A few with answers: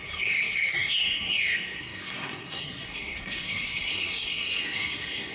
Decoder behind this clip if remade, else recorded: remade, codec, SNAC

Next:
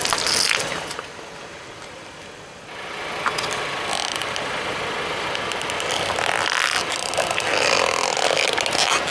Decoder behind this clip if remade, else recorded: recorded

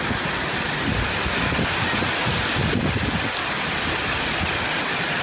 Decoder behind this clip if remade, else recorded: recorded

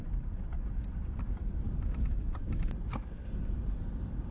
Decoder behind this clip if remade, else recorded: recorded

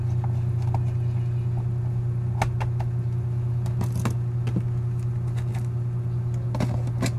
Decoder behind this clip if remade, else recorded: recorded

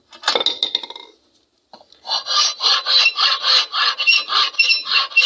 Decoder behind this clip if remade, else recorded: recorded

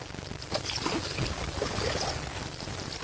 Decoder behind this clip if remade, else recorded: recorded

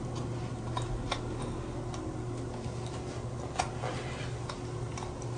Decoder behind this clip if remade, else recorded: recorded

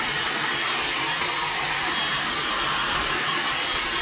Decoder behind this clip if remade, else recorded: recorded